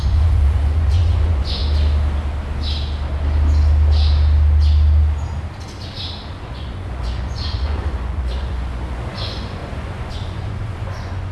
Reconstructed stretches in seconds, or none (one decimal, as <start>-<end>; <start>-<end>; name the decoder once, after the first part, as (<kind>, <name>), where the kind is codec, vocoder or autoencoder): 0.0-1.6 (vocoder, Vocos); 6.3-11.3